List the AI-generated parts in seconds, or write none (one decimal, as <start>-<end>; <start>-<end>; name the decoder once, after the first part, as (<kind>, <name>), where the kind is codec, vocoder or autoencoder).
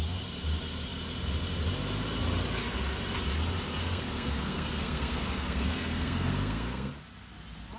3.8-6.9 (codec, SNAC)